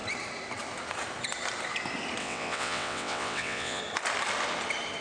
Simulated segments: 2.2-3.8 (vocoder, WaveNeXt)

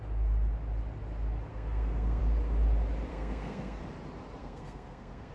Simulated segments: 1.5-2.2 (codec, SNAC); 3.1-3.8; 4.4-5.3

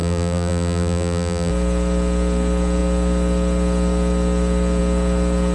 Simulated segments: 0.0-1.5 (vocoder, BigVGAN v2)

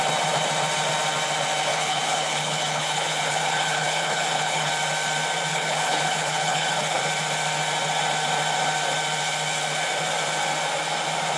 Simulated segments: 1.7-4.7 (codec, HILCodec); 5.5-7.0